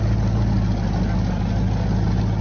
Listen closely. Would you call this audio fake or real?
real